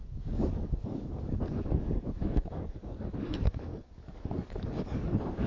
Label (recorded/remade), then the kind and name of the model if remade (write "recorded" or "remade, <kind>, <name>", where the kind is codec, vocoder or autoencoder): remade, codec, DAC